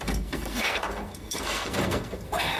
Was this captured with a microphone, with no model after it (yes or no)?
no